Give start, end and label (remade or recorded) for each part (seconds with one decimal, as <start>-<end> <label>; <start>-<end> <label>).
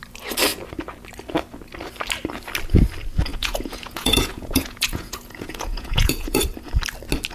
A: 0.0-3.3 recorded; 3.3-6.4 remade; 6.4-7.3 recorded